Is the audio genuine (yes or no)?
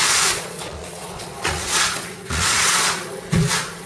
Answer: no